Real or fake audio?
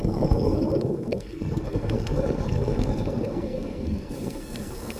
fake